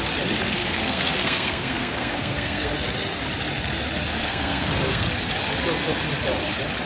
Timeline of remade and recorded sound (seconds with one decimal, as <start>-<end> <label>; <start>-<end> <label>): 0.0-0.6 recorded; 0.6-2.7 remade; 2.7-4.2 recorded; 4.2-5.1 remade; 5.1-6.9 recorded